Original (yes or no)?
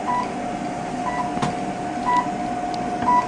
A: yes